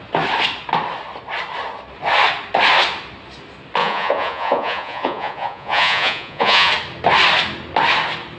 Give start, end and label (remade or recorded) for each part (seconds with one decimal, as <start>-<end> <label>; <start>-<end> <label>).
0.0-3.8 recorded; 3.8-6.7 remade; 6.7-8.4 recorded